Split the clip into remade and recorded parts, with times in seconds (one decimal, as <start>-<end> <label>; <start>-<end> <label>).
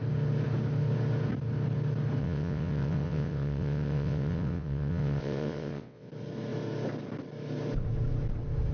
0.0-2.2 recorded; 2.2-6.1 remade; 6.1-8.7 recorded